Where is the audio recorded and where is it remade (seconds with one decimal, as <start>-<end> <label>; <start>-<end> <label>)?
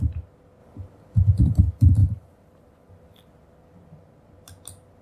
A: 0.0-0.6 recorded; 0.6-1.6 remade; 1.6-2.0 recorded; 2.0-2.9 remade; 2.9-5.0 recorded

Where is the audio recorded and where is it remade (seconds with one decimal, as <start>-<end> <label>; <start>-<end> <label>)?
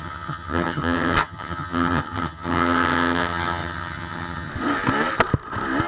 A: 0.0-4.5 remade; 4.5-5.9 recorded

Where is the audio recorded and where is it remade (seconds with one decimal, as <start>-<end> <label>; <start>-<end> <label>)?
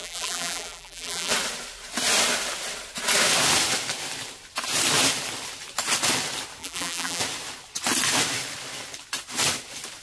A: 0.0-1.3 remade; 1.3-6.6 recorded; 6.6-7.2 remade; 7.2-10.0 recorded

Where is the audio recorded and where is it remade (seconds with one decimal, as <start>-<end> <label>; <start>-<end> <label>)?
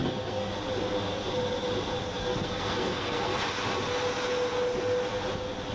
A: 0.0-0.5 remade; 0.5-2.2 recorded; 2.2-3.4 remade; 3.4-5.7 recorded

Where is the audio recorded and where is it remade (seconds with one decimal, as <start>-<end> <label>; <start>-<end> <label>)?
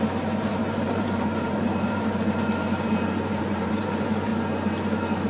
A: 0.0-4.3 remade; 4.3-5.3 recorded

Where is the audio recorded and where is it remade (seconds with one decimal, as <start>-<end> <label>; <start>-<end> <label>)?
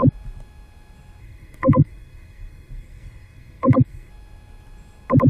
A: 0.0-1.2 recorded; 1.2-4.1 remade; 4.1-5.3 recorded